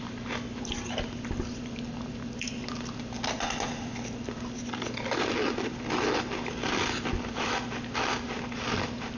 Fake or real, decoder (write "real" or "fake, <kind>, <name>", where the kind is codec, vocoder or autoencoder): real